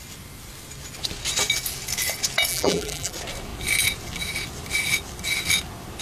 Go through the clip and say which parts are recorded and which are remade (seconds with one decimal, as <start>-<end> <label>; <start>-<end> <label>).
0.0-2.5 recorded; 2.5-3.1 remade; 3.1-6.0 recorded